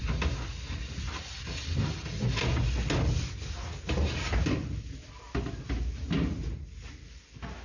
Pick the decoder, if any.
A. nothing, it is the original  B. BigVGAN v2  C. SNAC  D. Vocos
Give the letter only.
A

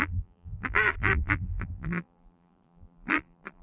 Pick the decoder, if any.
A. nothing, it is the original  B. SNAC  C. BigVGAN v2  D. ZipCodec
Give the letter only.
C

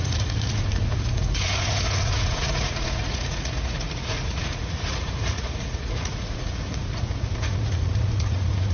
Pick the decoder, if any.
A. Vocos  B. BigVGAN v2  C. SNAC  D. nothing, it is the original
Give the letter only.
A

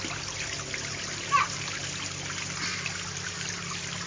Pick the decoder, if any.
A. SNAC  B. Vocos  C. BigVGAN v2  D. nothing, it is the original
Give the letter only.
D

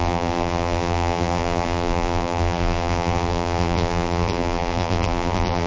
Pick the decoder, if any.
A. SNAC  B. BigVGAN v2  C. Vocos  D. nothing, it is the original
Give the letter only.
B